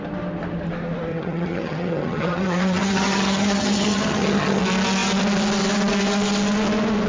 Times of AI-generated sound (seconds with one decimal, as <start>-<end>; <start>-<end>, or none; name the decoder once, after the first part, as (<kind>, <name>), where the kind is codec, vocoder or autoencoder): 1.1-4.6 (vocoder, HiFi-GAN)